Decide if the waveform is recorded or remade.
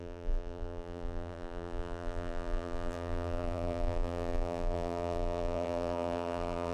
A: remade